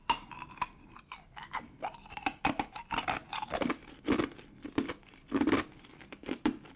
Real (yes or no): yes